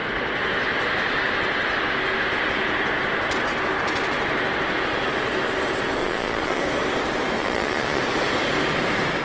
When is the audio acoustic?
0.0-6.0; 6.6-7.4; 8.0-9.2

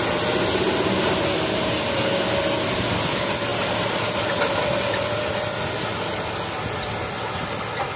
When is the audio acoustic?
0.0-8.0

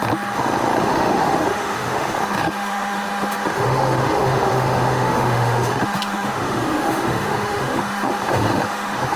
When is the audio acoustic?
0.0-0.8

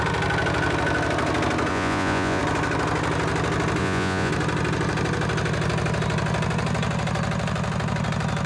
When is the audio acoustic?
0.0-1.7; 2.4-3.8; 4.3-8.5